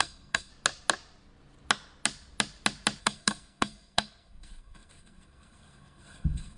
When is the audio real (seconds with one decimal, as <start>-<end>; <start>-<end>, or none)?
0.5-3.0